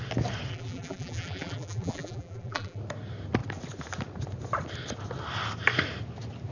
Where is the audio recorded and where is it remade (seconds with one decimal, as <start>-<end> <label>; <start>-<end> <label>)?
0.0-0.5 recorded; 0.5-2.8 remade; 2.8-6.5 recorded